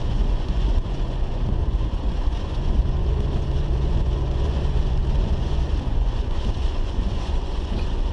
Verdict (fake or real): fake